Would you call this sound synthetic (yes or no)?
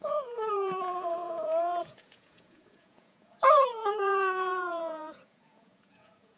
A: yes